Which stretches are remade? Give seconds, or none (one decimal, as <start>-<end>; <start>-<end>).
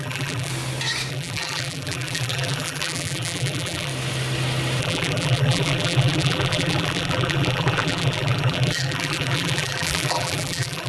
0.0-0.5; 1.1-3.9; 4.8-10.9